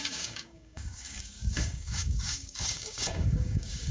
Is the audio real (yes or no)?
no